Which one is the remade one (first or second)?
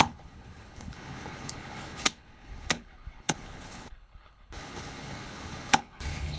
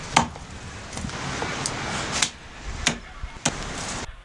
first